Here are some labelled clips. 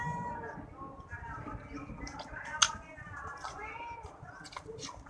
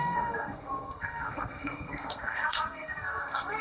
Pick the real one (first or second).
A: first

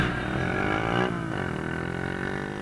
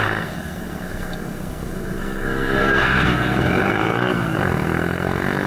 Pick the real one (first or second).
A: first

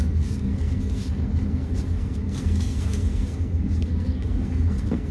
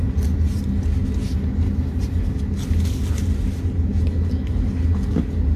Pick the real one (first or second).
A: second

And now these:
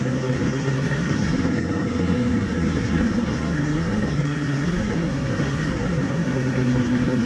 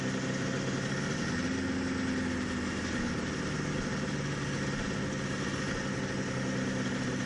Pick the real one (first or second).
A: second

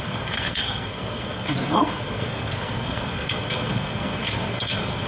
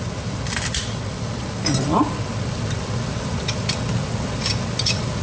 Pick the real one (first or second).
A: second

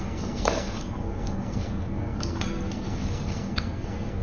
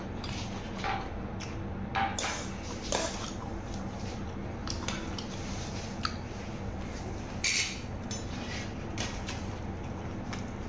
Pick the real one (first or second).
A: second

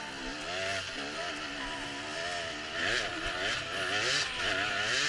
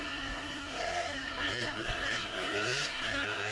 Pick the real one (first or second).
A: first